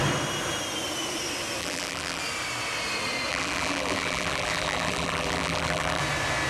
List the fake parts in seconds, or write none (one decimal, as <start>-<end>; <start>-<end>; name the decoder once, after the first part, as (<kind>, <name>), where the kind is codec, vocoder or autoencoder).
1.6-2.2 (vocoder, BigVGAN v2); 3.3-6.0